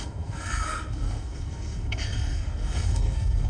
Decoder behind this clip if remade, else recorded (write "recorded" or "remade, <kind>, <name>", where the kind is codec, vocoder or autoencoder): remade, codec, SNAC